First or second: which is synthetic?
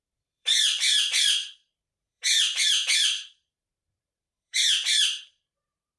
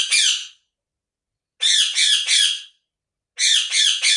first